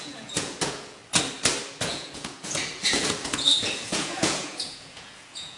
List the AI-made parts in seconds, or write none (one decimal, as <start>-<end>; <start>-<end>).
0.0-1.0; 1.8-5.6